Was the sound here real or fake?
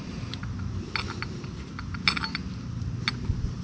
real